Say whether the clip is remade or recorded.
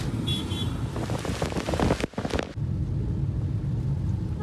recorded